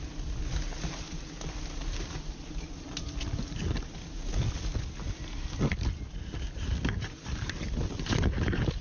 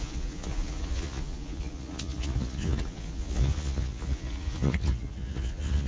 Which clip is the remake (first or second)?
second